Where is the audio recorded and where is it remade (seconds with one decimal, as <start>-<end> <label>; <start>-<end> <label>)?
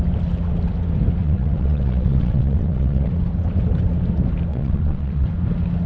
0.0-1.2 recorded; 1.2-3.1 remade; 3.1-4.5 recorded; 4.5-5.3 remade; 5.3-5.9 recorded